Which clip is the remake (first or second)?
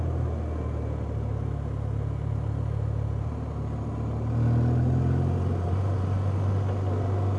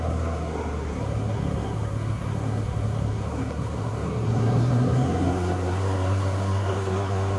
second